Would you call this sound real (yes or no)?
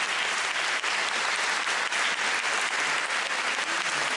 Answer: yes